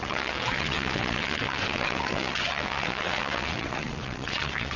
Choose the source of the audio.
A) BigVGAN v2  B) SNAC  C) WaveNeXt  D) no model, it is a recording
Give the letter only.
C